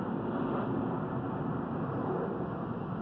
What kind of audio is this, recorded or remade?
recorded